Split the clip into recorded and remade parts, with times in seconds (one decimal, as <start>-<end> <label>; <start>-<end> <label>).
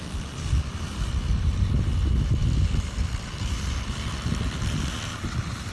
0.0-5.7 remade